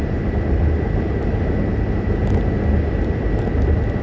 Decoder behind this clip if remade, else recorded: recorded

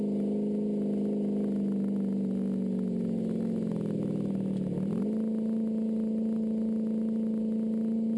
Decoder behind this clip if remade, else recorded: recorded